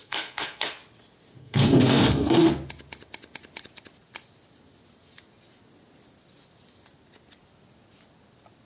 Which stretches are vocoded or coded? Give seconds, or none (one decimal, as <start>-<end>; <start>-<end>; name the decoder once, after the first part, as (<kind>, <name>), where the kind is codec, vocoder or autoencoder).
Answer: 0.0-0.8 (codec, SNAC); 1.4-2.5